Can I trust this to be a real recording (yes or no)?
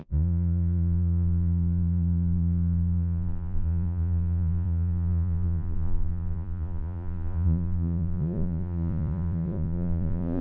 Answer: no